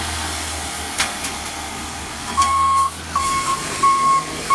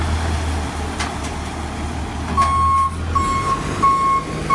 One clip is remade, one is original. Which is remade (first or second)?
first